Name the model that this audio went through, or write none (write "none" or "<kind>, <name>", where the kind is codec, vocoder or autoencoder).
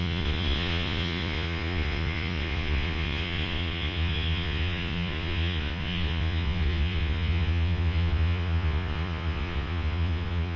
vocoder, Vocos